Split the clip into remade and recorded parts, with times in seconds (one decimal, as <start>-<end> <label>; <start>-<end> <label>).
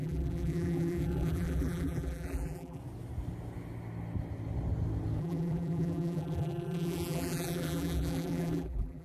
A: 0.0-2.8 remade; 2.8-5.2 recorded; 5.2-9.0 remade